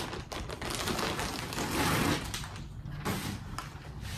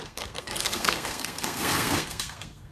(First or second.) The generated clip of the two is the second